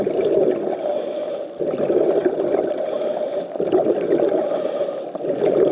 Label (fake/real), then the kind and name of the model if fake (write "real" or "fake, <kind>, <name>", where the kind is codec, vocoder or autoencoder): real